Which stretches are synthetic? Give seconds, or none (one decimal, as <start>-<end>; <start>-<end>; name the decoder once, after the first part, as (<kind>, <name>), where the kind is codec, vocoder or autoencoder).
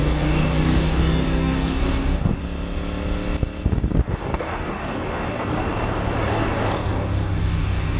0.0-2.4 (codec, DAC); 4.1-5.6; 6.2-8.0